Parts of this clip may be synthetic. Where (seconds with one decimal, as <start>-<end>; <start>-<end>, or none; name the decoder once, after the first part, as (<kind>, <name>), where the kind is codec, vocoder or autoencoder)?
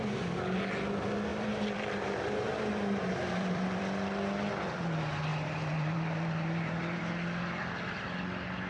1.3-3.8 (vocoder, BigVGAN v2); 5.3-7.0